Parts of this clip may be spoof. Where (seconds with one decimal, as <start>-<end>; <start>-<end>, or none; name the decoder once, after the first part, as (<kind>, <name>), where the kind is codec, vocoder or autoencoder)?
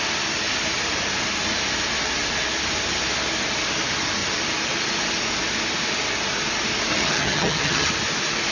6.9-7.9 (vocoder, HiFi-GAN)